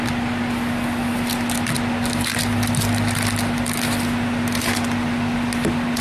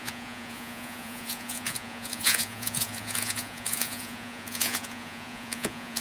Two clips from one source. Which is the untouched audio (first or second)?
first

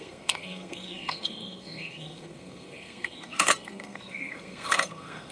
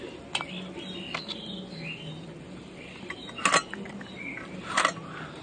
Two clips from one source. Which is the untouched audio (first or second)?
second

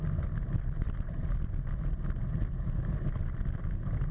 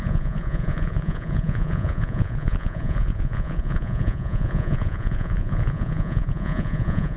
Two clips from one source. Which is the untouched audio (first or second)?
first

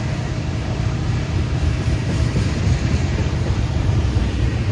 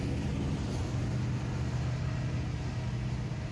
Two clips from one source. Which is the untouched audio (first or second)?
second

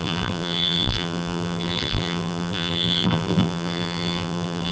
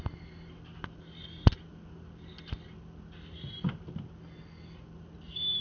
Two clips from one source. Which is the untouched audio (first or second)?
second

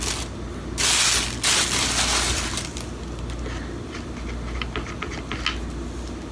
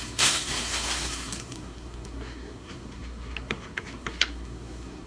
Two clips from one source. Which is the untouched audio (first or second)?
first